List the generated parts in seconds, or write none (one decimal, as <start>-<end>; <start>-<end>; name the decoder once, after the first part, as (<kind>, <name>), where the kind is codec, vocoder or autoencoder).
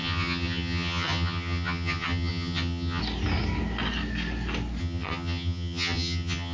0.0-3.0 (vocoder, HiFi-GAN); 4.8-6.5